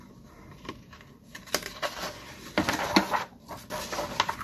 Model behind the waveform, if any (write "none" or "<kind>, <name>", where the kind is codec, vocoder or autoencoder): none